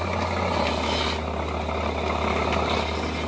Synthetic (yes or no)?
no